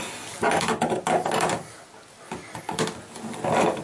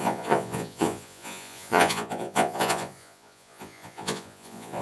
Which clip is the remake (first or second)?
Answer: second